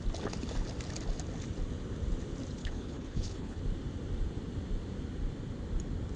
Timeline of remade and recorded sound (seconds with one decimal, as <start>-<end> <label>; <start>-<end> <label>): 0.0-2.6 recorded; 2.6-3.6 remade; 3.6-6.2 recorded